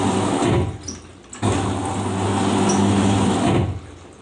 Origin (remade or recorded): recorded